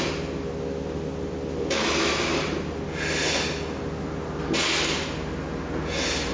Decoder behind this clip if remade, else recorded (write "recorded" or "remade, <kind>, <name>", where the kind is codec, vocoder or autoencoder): recorded